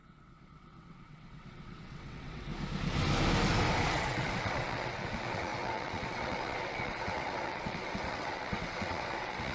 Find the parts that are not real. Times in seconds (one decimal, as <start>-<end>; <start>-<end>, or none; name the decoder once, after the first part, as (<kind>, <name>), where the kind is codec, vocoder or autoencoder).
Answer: 0.0-2.5 (vocoder, WaveNeXt); 3.9-9.5